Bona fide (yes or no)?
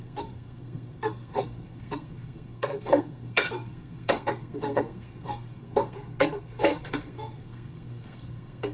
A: no